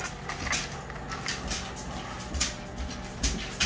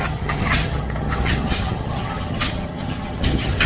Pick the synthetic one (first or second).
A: second